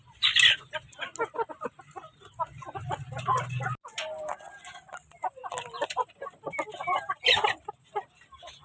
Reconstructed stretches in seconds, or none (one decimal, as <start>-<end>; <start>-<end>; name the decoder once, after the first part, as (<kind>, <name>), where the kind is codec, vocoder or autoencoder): none